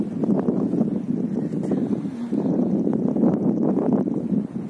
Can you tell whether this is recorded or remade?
recorded